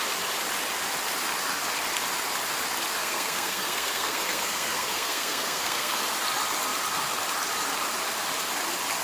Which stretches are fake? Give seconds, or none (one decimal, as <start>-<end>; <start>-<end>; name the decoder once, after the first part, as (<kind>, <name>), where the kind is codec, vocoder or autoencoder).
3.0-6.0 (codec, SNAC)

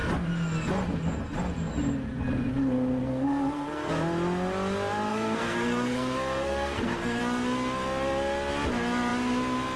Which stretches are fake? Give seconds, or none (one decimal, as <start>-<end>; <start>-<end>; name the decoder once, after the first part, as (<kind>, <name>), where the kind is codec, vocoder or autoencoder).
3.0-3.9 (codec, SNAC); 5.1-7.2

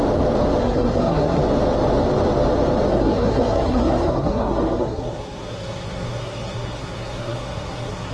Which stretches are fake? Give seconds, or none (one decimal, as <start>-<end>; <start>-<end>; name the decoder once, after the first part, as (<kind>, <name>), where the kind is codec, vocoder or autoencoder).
0.6-1.4 (codec, SNAC); 2.9-8.1

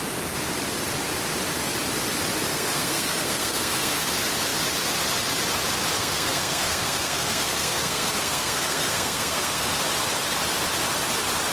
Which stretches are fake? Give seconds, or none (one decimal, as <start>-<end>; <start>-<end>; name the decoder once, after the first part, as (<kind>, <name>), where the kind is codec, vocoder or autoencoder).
2.5-4.1 (codec, SNAC); 6.0-9.8